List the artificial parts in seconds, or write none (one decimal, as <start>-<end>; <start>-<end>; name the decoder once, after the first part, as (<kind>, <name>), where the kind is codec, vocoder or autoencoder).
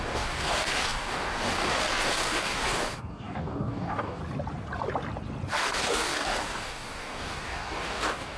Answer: 0.0-4.2 (codec, DAC); 5.5-8.4